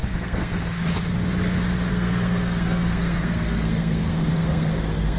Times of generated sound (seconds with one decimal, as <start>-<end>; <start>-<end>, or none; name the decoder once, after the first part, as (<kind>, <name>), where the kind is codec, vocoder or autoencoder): 0.0-0.6 (codec, SNAC); 1.9-5.2